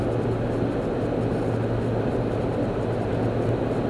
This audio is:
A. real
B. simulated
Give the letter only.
A